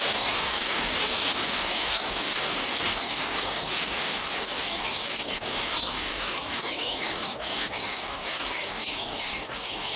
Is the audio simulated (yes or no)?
yes